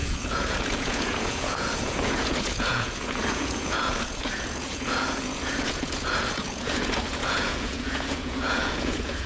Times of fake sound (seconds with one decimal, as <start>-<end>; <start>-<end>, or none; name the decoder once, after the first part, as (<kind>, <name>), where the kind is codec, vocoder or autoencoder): 0.0-9.3 (vocoder, Vocos)